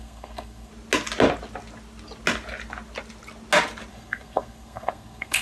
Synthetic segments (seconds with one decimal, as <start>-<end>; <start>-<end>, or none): 0.0-0.7; 3.9-5.4